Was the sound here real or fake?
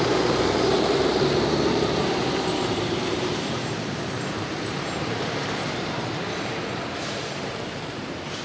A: fake